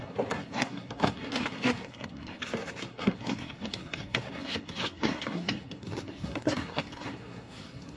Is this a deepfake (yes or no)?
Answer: yes